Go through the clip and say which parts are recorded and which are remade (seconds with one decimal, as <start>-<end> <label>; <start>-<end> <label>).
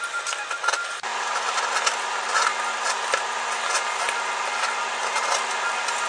0.0-6.1 recorded